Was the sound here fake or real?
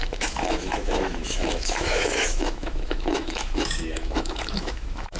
fake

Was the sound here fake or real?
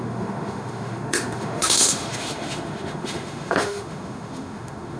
fake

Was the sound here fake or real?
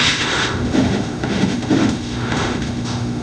fake